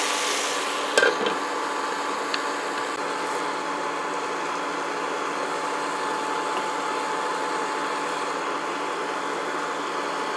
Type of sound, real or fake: real